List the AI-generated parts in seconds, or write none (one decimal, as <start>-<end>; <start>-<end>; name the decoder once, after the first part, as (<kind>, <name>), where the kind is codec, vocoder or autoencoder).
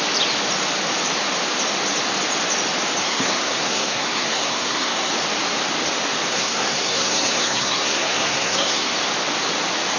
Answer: 3.0-5.1 (codec, SNAC); 6.3-8.9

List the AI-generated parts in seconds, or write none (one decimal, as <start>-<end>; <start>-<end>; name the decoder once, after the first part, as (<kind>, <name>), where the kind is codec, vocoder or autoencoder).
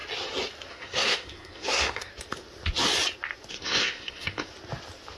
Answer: 0.7-2.1 (codec, SNAC); 3.5-4.5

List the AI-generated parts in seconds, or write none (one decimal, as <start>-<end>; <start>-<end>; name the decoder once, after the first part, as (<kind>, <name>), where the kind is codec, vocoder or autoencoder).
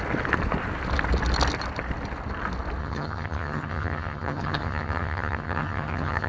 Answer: 2.8-6.3 (vocoder, HiFi-GAN)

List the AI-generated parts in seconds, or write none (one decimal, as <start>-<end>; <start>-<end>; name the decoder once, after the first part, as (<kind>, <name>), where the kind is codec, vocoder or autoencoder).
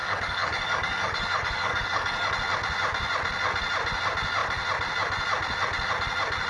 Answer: 0.0-2.3 (codec, DAC)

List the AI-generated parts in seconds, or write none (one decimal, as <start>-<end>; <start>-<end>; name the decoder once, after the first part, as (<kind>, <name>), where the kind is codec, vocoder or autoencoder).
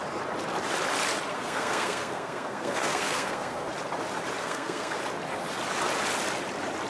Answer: 1.3-3.7 (codec, SNAC); 4.4-5.0